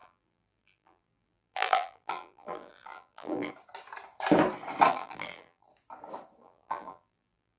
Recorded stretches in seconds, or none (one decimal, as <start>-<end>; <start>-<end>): 3.5-4.9; 5.7-6.4